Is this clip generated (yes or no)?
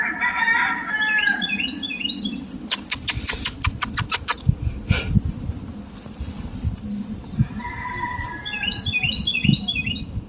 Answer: no